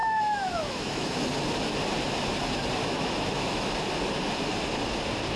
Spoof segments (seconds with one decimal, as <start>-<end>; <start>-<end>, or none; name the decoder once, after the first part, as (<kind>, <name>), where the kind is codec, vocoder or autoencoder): 0.0-1.2 (autoencoder, DAC-VAE); 2.8-3.7